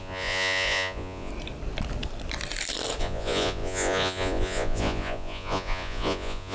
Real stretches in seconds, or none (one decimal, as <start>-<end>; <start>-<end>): 1.3-3.0